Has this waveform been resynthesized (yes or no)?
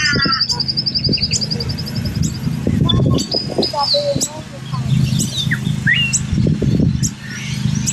no